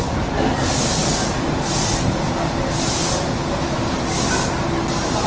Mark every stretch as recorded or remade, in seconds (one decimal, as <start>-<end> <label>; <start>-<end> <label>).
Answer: 0.0-5.3 recorded